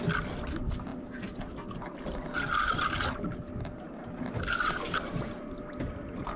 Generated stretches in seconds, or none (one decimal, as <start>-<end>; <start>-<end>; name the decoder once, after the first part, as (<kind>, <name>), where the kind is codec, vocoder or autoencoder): none